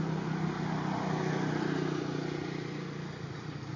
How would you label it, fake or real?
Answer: real